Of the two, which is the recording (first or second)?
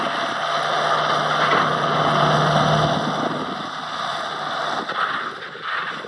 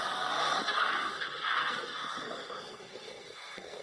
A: first